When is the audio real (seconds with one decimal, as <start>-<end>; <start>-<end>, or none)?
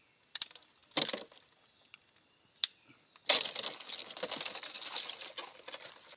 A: 0.0-6.2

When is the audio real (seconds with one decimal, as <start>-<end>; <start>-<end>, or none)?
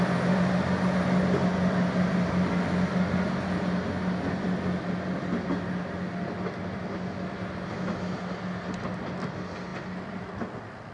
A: 0.0-10.9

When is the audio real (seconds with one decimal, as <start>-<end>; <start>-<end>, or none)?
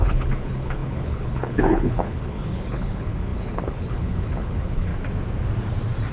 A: 4.9-6.1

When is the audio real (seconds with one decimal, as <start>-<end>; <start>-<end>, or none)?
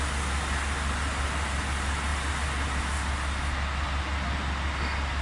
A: 0.0-5.2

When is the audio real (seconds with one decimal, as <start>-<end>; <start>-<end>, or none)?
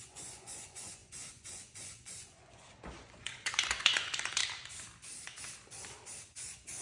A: 4.4-6.2